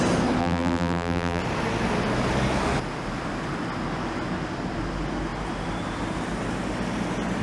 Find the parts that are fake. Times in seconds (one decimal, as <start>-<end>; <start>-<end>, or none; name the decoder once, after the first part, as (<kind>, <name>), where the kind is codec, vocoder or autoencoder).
0.4-1.4 (vocoder, BigVGAN v2)